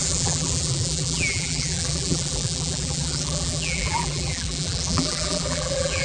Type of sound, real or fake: fake